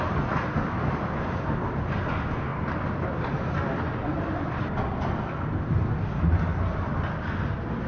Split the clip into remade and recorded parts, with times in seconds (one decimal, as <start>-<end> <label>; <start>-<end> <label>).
0.0-7.9 recorded